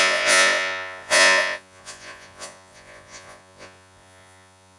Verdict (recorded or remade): remade